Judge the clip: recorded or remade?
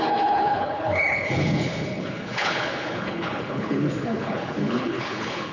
remade